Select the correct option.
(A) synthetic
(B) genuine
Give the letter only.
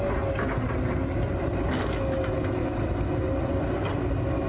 B